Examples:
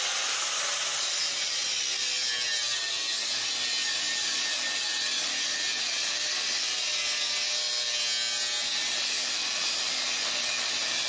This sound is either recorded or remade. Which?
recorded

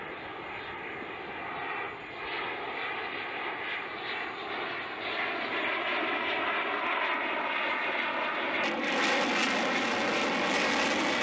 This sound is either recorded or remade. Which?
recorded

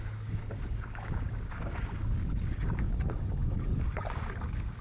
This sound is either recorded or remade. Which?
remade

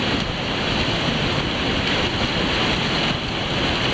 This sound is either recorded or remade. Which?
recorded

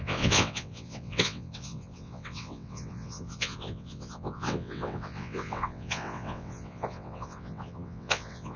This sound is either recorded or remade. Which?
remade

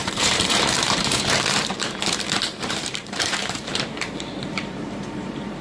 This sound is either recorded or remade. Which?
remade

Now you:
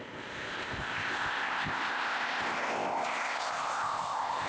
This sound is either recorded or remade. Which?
remade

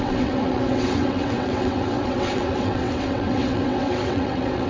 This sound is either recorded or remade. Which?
remade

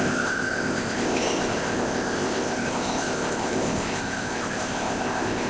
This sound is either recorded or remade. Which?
remade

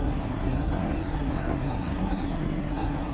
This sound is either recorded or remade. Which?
remade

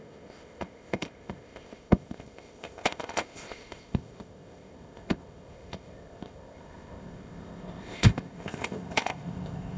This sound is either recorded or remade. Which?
remade